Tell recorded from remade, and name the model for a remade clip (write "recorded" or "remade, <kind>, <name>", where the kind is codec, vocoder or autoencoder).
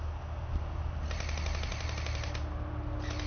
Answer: recorded